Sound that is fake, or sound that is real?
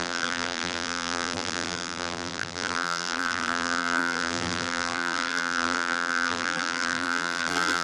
fake